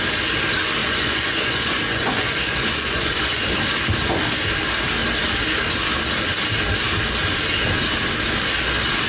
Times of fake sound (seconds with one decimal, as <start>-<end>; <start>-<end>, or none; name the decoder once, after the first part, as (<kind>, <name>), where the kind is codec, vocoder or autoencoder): 0.8-3.4 (vocoder, Vocos)